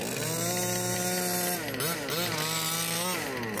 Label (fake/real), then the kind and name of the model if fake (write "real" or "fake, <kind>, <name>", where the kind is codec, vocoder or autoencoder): real